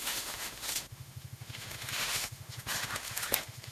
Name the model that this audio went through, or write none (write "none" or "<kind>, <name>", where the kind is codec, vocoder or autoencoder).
autoencoder, DAC-VAE